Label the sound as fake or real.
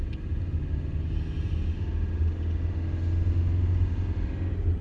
real